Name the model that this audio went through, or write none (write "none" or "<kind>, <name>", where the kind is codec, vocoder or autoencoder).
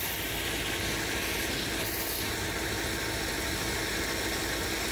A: none